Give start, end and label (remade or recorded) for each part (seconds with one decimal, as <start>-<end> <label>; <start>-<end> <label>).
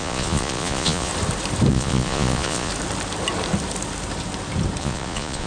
0.0-1.1 remade; 1.1-1.7 recorded; 1.7-2.7 remade; 2.7-4.8 recorded; 4.8-5.5 remade